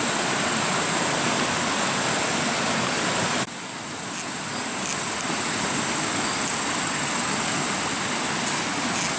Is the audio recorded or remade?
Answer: recorded